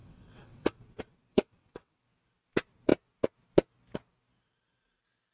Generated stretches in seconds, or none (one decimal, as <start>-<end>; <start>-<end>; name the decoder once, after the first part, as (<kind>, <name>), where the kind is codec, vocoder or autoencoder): 0.0-0.8 (vocoder, WaveNeXt); 1.3-2.0